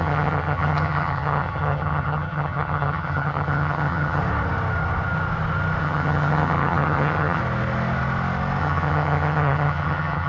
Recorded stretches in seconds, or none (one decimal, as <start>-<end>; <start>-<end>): 4.2-5.8; 7.4-8.6